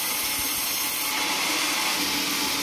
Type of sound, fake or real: real